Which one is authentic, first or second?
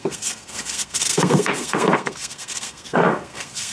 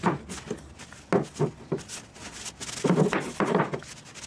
second